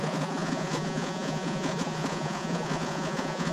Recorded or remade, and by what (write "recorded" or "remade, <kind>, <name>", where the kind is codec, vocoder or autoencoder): remade, vocoder, Vocos